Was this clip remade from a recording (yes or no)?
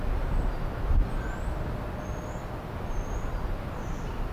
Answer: no